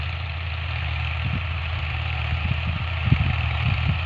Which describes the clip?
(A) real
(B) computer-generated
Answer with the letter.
A